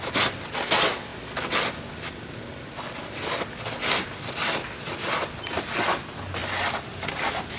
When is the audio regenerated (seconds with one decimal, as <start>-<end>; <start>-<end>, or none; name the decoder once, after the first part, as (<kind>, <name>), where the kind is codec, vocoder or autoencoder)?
none